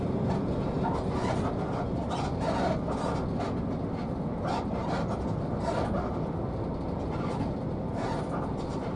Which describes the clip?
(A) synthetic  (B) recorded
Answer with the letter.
B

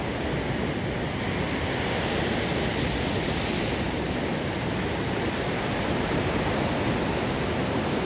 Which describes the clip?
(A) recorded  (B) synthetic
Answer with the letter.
A